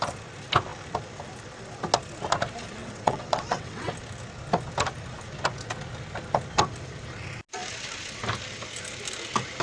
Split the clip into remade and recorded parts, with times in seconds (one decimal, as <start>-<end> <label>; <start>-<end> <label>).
0.0-2.8 recorded; 2.8-3.9 remade; 3.9-9.6 recorded